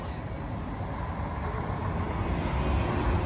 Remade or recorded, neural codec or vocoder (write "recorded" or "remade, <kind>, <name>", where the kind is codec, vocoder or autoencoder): recorded